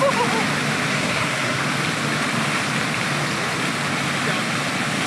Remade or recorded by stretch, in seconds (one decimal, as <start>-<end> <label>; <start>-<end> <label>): 0.0-0.9 recorded; 0.9-1.6 remade; 1.6-5.1 recorded